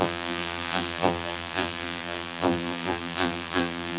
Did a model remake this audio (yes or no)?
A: yes